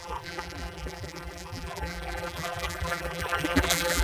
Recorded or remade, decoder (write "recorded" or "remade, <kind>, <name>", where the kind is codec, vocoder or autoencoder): remade, vocoder, BigVGAN v2